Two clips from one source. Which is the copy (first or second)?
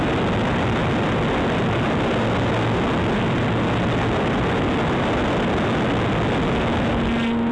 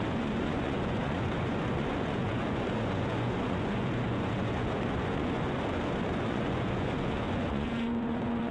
second